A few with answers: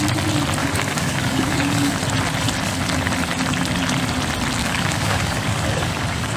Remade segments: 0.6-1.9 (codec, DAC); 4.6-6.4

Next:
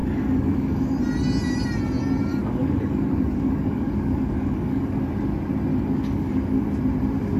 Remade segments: 0.0-1.0 (codec, DAC); 2.3-5.0; 5.7-6.6

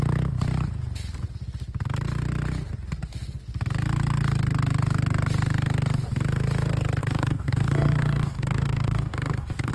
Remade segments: 7.0-9.7 (codec, DAC)

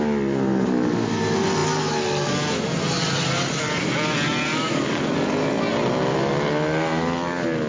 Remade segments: 4.5-5.0 (codec, DAC)

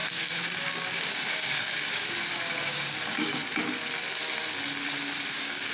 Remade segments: 0.0-3.4 (codec, DAC); 5.3-5.7